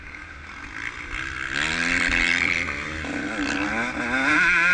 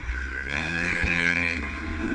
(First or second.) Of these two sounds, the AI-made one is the second